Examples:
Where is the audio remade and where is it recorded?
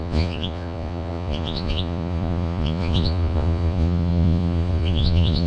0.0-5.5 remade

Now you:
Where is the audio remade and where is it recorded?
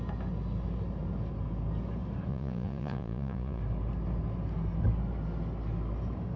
0.0-2.3 recorded; 2.3-3.6 remade; 3.6-6.4 recorded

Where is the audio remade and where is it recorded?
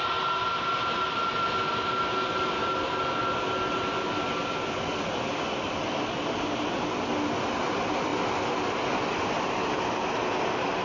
0.0-10.8 recorded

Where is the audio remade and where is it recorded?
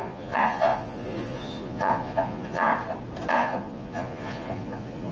0.0-2.7 remade; 2.7-3.3 recorded; 3.3-5.1 remade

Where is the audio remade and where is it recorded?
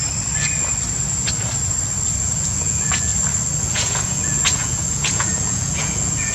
0.0-2.2 recorded; 2.2-3.1 remade; 3.1-3.6 recorded; 3.6-6.3 remade